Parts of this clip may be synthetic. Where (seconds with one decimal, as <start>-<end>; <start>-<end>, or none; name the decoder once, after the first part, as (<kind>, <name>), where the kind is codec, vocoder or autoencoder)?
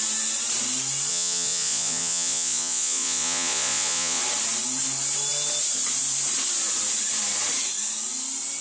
1.1-4.2 (vocoder, Vocos)